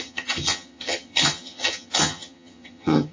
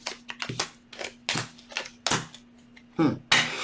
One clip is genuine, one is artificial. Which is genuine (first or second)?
second